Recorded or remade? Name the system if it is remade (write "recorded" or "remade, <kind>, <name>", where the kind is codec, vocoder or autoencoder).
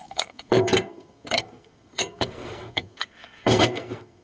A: remade, codec, SNAC